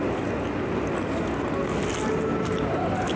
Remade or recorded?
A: recorded